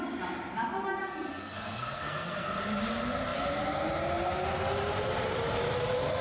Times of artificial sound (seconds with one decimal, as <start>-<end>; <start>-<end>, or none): 1.4-2.6